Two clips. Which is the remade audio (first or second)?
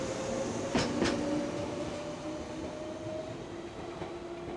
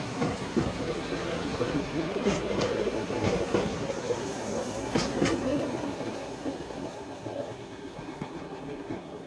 second